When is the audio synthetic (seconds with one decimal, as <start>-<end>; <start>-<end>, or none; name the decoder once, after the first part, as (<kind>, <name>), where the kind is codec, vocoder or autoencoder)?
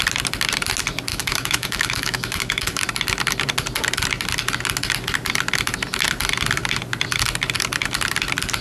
1.1-2.8 (autoencoder, DAC-VAE)